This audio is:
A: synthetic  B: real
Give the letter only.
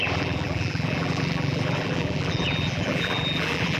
A